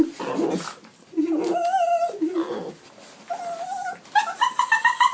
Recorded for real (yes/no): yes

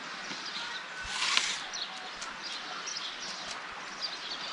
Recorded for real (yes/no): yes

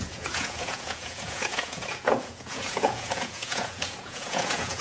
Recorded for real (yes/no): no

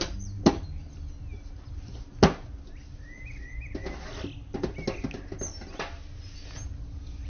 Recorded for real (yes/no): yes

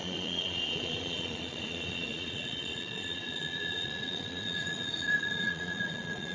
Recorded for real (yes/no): no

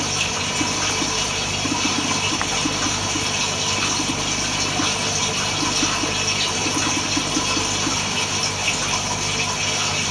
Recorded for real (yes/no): yes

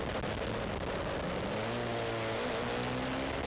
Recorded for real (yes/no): yes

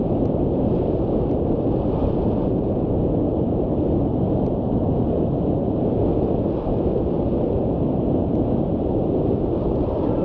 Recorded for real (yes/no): yes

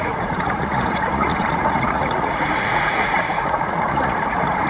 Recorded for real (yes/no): no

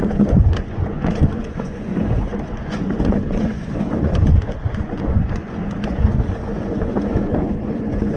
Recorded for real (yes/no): no